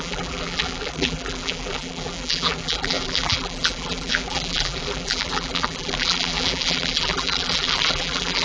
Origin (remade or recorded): remade